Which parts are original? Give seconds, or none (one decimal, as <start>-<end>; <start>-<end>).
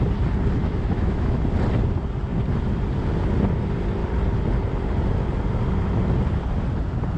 0.0-0.6; 1.4-7.2